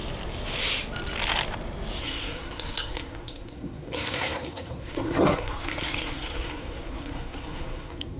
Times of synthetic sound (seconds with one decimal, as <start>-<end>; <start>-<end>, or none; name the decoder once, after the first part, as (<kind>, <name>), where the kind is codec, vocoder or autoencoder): 2.0-8.2 (codec, SNAC)